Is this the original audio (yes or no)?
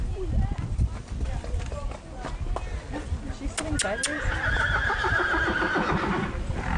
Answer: yes